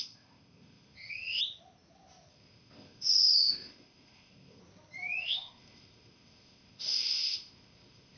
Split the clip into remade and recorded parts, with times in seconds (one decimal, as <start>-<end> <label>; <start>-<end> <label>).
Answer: 0.0-1.4 remade; 1.4-2.3 recorded; 2.3-4.6 remade; 4.6-5.2 recorded; 5.2-8.2 remade